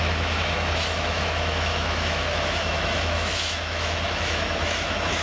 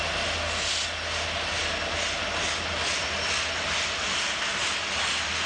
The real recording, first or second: second